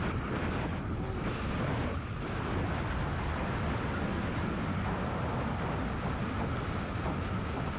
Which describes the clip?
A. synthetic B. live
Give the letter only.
B